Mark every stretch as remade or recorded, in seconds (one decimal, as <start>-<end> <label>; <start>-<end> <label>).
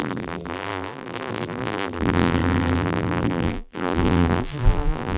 0.0-5.2 remade